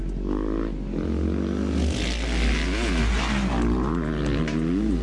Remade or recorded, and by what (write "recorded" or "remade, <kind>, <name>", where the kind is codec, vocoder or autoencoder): recorded